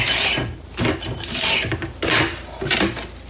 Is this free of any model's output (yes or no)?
yes